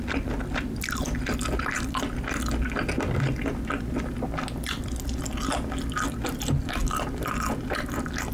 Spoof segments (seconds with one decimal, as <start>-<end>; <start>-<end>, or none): none